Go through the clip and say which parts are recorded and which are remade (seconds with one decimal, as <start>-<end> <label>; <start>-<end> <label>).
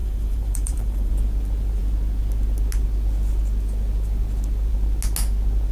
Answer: 0.0-1.1 remade; 1.1-5.7 recorded